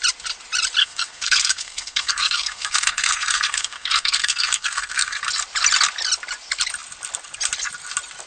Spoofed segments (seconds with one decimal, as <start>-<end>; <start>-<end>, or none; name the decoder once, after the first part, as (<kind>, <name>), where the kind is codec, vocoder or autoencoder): 0.8-5.2 (codec, SNAC)